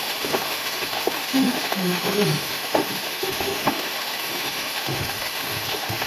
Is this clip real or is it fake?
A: fake